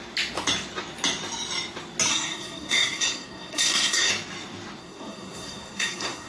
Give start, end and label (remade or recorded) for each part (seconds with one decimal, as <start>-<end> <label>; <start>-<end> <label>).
0.0-2.1 recorded; 2.1-4.1 remade; 4.1-4.8 recorded; 4.8-6.3 remade